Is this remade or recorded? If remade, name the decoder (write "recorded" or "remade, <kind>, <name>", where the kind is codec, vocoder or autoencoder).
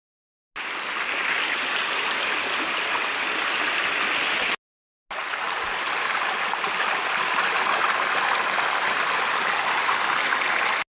recorded